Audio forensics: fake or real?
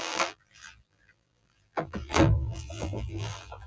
fake